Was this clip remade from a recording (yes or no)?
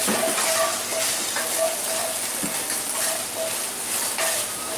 no